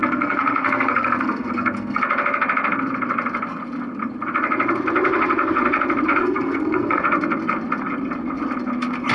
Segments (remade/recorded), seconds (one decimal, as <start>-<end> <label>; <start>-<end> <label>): 0.0-2.0 remade; 2.0-6.2 recorded; 6.2-7.0 remade; 7.0-9.1 recorded